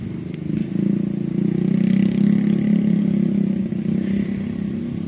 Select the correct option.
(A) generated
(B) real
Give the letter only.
B